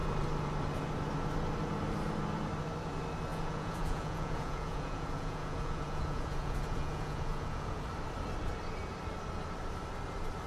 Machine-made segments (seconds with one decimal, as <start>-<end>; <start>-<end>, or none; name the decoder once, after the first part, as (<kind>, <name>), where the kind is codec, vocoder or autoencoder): 3.3-7.8 (vocoder, Vocos)